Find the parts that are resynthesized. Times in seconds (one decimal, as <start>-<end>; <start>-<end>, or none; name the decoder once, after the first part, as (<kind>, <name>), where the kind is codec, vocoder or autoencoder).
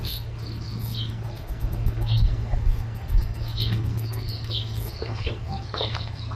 0.0-6.4 (codec, SNAC)